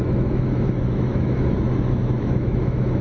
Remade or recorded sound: remade